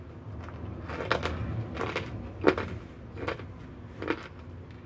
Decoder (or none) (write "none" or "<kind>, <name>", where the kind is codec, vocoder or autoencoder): none